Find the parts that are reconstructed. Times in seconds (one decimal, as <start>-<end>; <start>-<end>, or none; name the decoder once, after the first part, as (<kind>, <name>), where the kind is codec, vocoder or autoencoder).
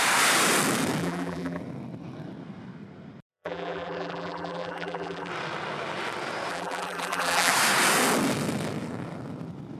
1.0-1.6 (vocoder, BigVGAN v2); 3.3-5.3; 6.5-7.5